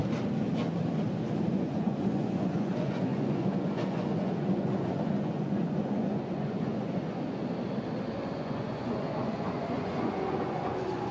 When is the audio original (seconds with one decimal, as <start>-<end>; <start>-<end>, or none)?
0.0-1.5; 7.4-8.1